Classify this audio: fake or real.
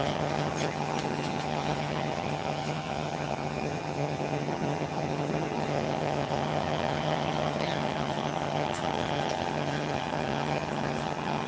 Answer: fake